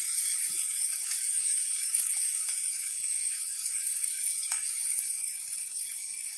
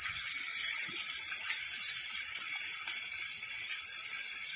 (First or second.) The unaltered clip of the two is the second